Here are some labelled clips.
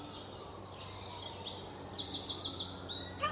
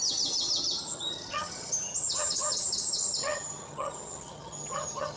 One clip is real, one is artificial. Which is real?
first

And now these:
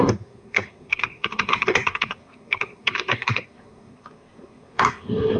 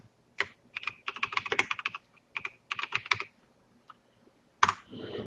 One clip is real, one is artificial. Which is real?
second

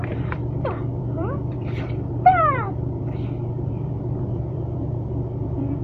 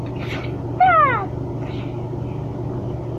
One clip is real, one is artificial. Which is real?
second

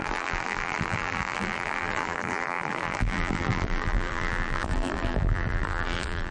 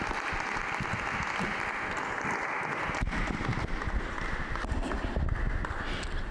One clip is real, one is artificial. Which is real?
second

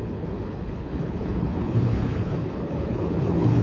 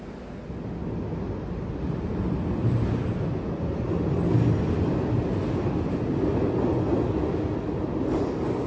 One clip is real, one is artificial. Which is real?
second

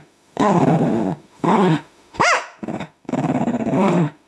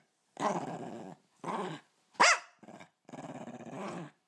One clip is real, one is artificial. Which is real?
second